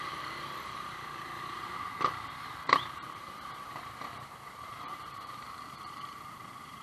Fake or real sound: fake